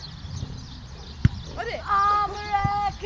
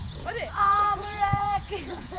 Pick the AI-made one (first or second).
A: second